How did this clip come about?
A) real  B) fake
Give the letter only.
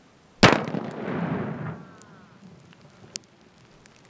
A